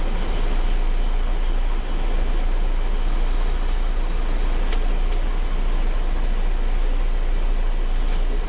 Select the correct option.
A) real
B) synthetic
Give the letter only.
A